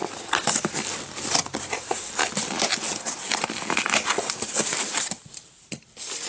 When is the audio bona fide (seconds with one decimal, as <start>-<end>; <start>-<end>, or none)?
2.2-5.2